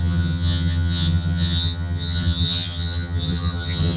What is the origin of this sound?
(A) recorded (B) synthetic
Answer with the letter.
B